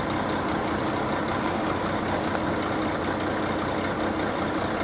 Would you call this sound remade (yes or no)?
no